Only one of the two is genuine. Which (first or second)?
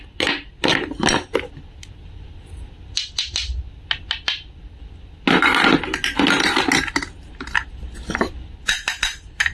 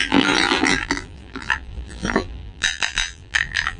first